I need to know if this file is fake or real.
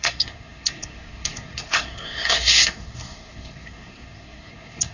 fake